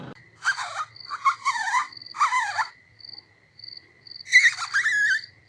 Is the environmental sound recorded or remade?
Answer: recorded